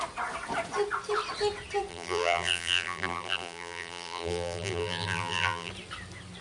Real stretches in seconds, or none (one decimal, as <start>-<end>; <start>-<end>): 0.0-1.9; 5.7-6.4

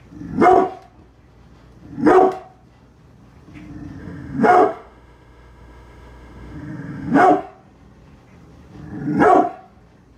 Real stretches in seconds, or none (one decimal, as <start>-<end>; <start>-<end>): 0.0-4.0; 7.3-10.2

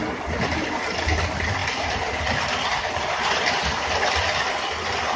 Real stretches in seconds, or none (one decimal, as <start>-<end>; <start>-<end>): 0.0-5.2

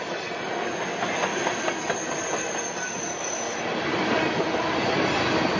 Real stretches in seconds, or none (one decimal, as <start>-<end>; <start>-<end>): 0.0-5.6

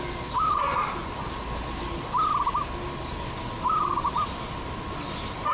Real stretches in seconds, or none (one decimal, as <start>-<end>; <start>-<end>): 0.0-5.5